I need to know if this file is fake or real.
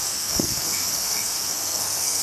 fake